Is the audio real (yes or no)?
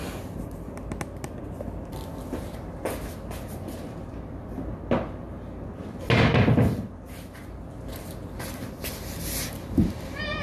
yes